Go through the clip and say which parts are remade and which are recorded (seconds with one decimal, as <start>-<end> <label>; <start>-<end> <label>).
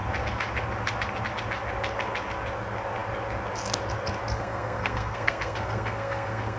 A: 0.0-4.3 recorded; 4.3-6.6 remade